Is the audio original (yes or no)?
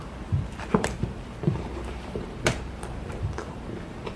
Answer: no